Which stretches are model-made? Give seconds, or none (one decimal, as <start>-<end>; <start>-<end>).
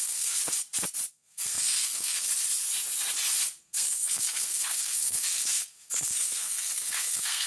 0.0-0.4; 1.1-2.3; 3.6-7.5